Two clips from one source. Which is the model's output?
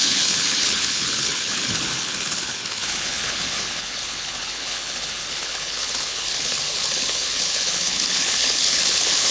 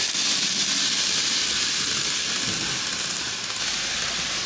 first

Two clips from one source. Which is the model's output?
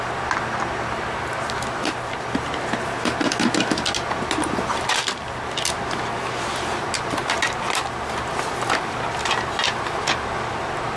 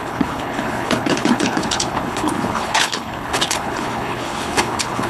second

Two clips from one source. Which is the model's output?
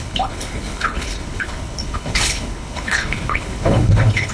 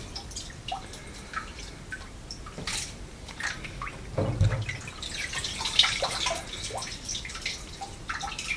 first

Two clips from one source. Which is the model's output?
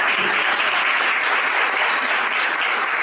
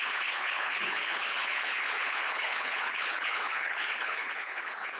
second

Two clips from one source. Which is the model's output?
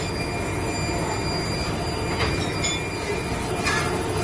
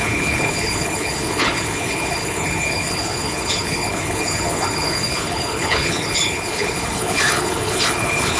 second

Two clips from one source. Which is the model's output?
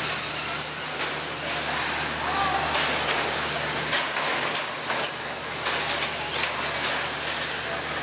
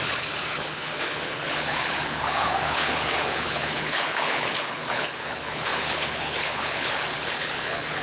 second